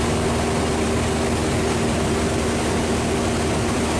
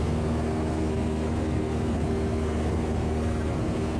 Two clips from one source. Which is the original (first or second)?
first